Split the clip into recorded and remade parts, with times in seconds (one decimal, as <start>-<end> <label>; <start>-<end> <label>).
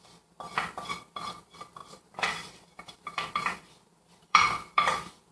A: 0.0-1.8 recorded; 1.8-5.3 remade